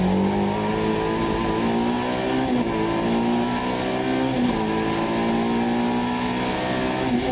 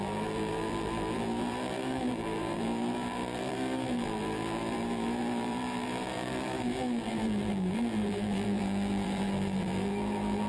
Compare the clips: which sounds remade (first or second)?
second